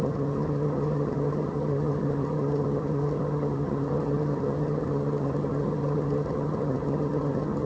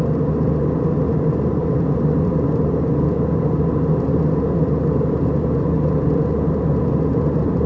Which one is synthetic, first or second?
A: first